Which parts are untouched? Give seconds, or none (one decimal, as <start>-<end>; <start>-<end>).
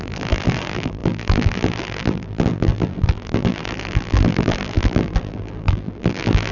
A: none